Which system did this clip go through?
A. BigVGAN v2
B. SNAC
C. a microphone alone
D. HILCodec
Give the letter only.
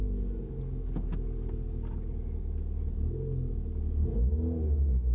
C